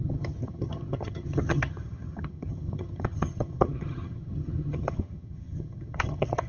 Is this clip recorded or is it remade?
remade